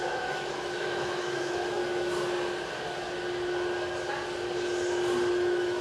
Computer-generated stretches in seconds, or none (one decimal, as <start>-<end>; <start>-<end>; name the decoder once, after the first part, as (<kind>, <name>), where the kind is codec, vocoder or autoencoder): 0.0-1.8 (autoencoder, DAC-VAE); 5.3-5.8